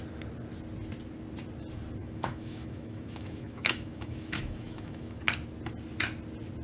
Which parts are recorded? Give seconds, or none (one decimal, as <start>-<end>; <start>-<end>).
0.0-2.0; 5.2-6.6